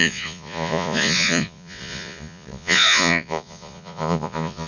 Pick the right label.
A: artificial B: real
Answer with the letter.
A